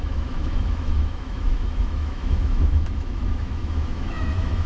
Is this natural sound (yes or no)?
no